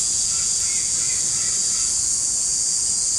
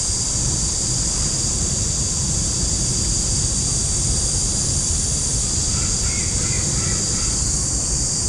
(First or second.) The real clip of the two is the second